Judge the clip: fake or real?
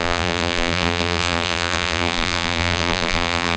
fake